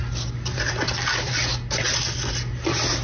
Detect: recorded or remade recorded